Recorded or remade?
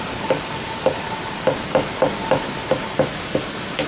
recorded